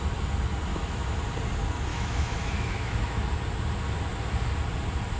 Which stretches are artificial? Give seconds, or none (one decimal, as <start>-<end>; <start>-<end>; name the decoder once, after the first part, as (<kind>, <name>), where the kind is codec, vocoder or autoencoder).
0.7-1.2 (autoencoder, DAC-VAE); 1.9-3.2